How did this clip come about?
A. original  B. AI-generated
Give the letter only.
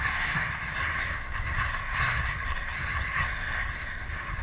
B